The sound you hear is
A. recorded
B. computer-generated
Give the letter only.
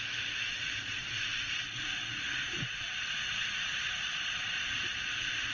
B